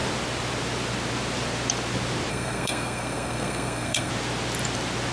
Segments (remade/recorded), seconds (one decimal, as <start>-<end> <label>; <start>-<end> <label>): 0.0-2.3 recorded; 2.3-4.1 remade; 4.1-5.1 recorded